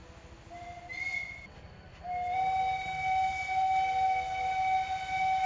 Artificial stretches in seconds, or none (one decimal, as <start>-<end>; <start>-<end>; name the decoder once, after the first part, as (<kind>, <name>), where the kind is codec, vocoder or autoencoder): none